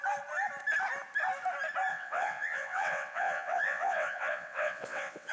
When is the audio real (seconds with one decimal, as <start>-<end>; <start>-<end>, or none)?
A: 0.0-1.9